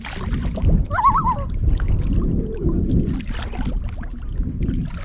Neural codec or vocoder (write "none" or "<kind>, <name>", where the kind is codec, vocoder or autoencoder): none